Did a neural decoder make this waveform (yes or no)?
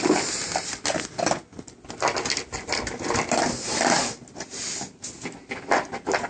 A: no